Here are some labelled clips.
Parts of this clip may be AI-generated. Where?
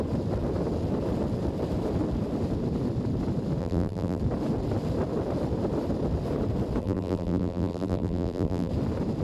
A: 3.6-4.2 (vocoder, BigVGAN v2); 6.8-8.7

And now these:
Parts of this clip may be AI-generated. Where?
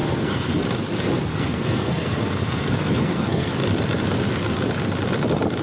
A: 0.0-0.6 (codec, SNAC); 1.3-3.5